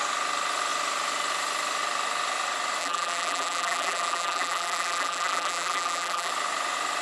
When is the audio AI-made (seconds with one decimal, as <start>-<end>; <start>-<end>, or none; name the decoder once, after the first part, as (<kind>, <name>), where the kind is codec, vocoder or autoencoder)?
2.8-6.3 (vocoder, BigVGAN v2)